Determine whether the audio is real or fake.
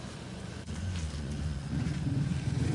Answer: fake